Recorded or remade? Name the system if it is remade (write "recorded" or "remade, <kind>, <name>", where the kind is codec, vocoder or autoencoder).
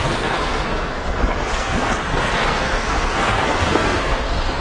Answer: remade, codec, SNAC